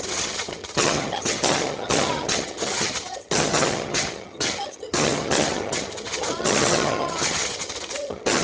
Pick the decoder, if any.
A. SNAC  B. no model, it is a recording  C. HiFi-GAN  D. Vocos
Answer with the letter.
C